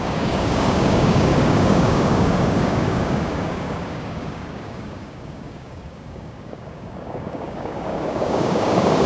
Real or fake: fake